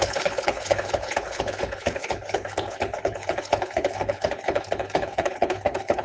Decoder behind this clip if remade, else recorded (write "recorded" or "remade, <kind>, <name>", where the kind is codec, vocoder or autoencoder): remade, codec, HILCodec